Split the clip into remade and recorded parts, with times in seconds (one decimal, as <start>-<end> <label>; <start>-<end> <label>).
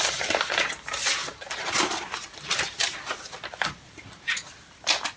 0.0-5.2 recorded